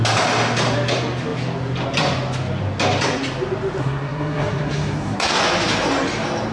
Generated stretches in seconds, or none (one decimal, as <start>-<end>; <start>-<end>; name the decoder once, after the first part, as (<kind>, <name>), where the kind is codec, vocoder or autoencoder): 3.8-5.4 (codec, SNAC)